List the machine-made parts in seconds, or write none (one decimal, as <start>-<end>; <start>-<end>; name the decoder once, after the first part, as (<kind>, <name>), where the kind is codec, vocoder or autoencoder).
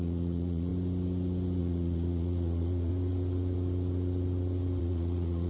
0.0-0.7 (vocoder, Vocos); 1.6-2.9; 4.8-5.5